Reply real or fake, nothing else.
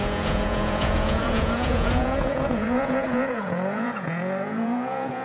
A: fake